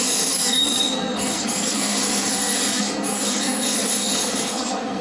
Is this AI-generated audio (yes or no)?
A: yes